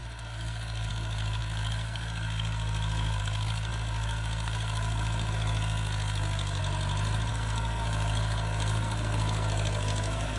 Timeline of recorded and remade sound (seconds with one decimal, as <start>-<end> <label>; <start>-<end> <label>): 0.0-6.6 remade; 6.6-7.3 recorded; 7.3-10.4 remade